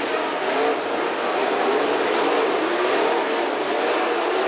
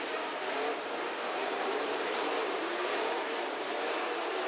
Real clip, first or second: first